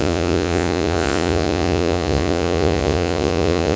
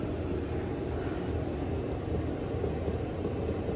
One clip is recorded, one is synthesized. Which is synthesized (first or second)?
first